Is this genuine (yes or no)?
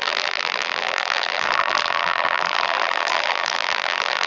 no